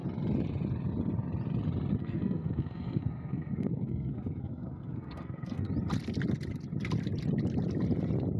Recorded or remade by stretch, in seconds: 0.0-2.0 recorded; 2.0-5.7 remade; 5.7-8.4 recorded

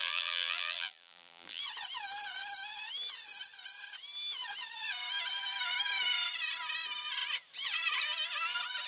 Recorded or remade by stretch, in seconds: 0.0-1.6 remade; 1.6-8.9 recorded

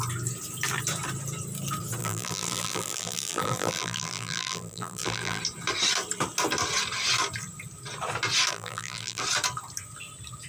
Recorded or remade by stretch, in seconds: 0.0-2.0 recorded; 2.0-5.4 remade; 5.4-8.5 recorded; 8.5-9.2 remade; 9.2-10.5 recorded

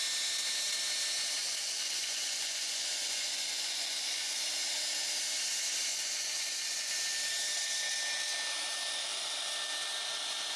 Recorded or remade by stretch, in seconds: 0.0-1.4 recorded; 1.4-4.4 remade; 4.4-5.9 recorded; 5.9-6.9 remade; 6.9-10.6 recorded